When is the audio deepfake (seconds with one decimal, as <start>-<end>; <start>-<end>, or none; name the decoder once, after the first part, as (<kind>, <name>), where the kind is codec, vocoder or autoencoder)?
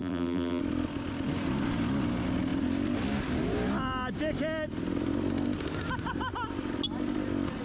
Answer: 0.0-0.6 (vocoder, BigVGAN v2)